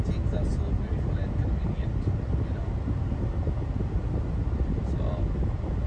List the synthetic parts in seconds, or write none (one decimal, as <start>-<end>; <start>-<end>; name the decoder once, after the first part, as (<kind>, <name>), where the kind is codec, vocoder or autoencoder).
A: none